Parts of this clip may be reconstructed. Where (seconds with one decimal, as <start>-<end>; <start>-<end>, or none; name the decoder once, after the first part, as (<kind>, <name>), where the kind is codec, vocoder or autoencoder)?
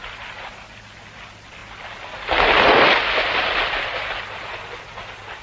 none